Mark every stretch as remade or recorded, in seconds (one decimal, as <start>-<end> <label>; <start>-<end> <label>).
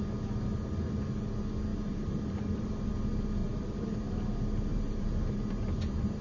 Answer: 0.0-1.7 recorded; 1.7-2.9 remade; 2.9-3.4 recorded; 3.4-4.0 remade; 4.0-4.7 recorded; 4.7-6.2 remade